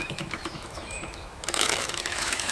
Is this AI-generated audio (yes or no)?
yes